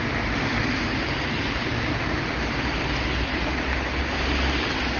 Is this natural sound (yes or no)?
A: yes